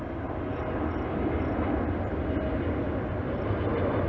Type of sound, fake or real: real